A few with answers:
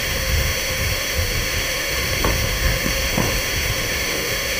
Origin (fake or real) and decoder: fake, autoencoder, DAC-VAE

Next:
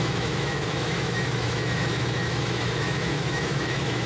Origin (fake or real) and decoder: fake, autoencoder, DAC-VAE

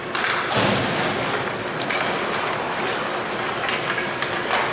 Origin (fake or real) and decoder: real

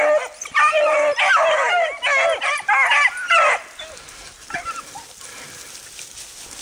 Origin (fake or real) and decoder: real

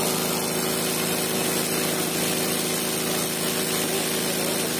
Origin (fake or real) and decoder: real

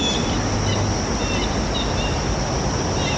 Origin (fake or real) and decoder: real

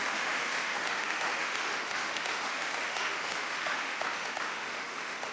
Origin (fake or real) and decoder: fake, autoencoder, DAC-VAE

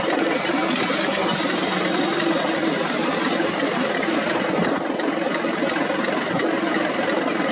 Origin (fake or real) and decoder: real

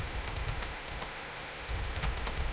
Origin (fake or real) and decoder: fake, autoencoder, DAC-VAE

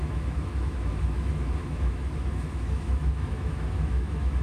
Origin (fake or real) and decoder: fake, autoencoder, DAC-VAE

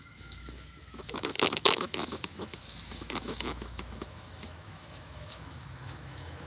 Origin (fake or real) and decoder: fake, autoencoder, DAC-VAE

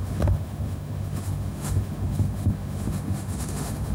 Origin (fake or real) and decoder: fake, autoencoder, DAC-VAE